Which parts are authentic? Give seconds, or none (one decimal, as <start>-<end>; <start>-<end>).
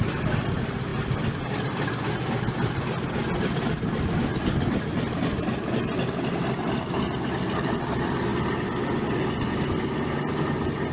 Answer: 0.0-10.9